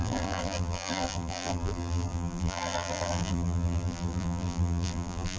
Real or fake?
fake